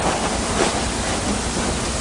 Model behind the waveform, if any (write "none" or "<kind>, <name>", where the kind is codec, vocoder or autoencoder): none